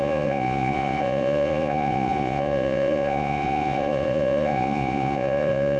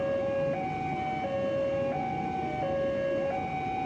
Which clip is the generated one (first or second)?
first